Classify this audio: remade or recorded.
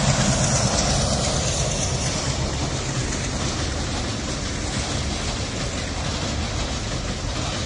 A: recorded